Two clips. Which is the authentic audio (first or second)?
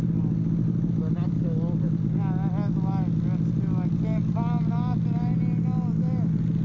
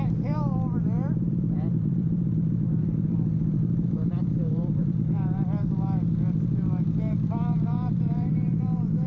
first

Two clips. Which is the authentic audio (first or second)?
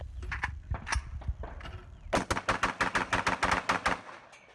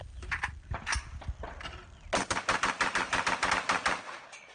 first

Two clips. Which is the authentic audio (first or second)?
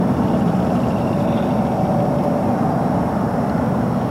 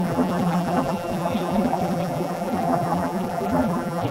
first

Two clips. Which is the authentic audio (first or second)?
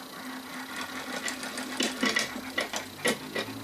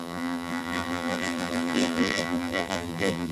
first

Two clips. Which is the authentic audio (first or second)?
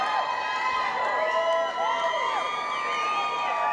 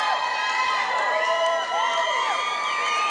first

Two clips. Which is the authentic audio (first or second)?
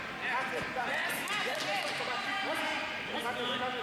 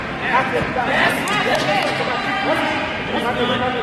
first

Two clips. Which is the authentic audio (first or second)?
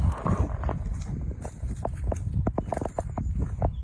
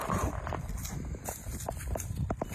first